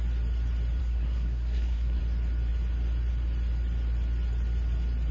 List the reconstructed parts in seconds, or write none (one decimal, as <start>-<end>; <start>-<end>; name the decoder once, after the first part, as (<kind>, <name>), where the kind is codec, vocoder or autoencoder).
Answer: 0.8-2.0 (codec, SNAC)